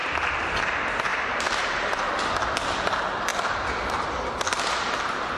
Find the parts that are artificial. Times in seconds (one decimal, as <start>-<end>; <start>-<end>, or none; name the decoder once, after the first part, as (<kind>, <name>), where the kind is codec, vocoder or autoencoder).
1.1-2.0 (vocoder, BigVGAN v2)